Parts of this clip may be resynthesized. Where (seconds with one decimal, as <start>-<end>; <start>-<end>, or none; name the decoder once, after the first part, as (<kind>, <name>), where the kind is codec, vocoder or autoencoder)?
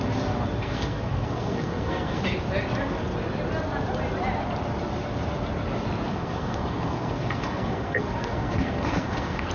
0.6-2.2 (codec, SNAC); 6.1-9.5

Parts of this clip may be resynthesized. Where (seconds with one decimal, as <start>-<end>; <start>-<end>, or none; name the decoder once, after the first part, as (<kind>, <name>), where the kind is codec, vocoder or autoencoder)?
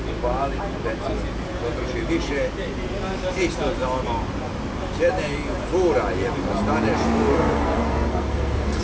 7.3-8.8 (codec, SNAC)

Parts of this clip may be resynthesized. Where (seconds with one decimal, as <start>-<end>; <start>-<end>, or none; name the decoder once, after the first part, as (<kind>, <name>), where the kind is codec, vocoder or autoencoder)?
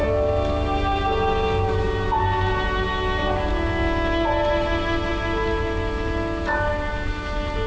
none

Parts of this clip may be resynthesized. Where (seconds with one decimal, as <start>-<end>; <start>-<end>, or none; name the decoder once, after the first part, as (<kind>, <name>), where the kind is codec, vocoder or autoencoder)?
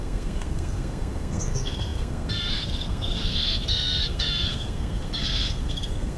0.0-6.2 (codec, SNAC)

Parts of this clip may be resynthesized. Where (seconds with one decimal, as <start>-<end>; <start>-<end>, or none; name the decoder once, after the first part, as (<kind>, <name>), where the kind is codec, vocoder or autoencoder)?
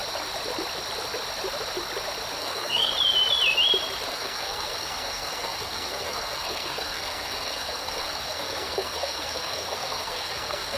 2.4-2.9 (codec, SNAC); 4.1-10.8